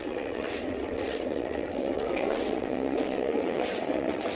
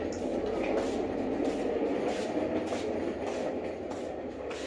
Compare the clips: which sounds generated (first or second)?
first